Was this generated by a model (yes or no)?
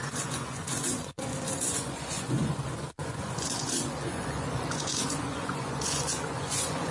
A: yes